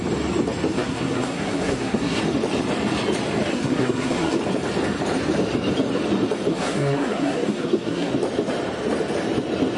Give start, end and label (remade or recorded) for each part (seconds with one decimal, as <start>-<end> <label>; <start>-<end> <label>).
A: 0.0-0.7 recorded; 0.7-2.2 remade; 2.2-3.5 recorded; 3.5-4.4 remade; 4.4-6.5 recorded; 6.5-8.1 remade; 8.1-9.8 recorded